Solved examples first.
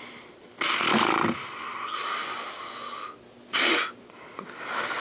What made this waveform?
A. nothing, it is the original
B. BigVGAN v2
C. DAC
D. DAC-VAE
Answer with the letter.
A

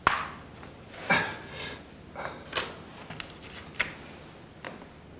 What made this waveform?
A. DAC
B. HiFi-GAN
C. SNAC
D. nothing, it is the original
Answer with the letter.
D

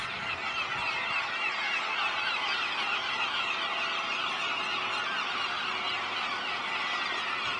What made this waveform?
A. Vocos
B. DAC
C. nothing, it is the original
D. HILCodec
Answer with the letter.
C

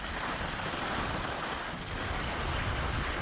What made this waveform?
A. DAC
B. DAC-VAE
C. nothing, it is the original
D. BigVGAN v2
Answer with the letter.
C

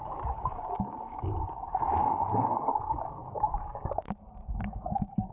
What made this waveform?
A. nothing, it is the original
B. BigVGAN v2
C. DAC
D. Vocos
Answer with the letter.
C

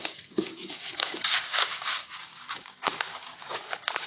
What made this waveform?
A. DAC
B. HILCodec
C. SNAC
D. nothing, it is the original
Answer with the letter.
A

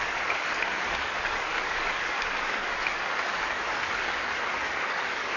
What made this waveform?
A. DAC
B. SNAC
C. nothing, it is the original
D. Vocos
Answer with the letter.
A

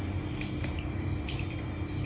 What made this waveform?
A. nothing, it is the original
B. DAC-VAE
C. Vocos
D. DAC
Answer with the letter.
A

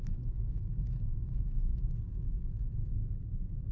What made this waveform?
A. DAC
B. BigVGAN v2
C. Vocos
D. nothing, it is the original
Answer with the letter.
A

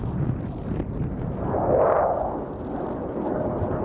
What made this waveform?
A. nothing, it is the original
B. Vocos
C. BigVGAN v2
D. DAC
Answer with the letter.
A